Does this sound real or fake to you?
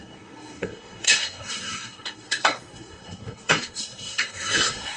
fake